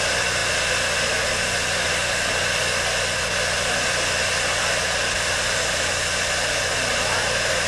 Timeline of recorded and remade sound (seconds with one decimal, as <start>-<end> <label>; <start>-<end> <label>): 0.0-7.7 recorded